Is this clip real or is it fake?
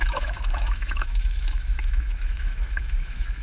fake